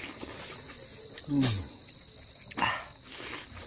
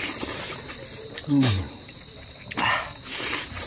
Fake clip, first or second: second